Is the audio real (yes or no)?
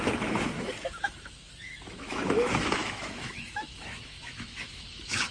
no